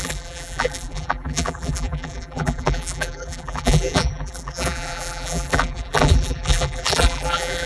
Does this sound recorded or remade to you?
remade